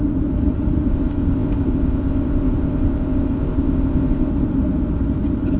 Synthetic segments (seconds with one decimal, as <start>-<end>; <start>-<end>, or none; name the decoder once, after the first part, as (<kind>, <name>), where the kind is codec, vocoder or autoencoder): 0.9-4.3 (codec, ZipCodec)